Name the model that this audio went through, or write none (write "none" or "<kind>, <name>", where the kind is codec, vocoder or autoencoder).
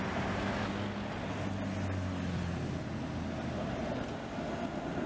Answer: none